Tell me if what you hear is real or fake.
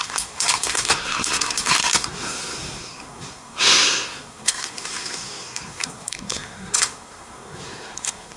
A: fake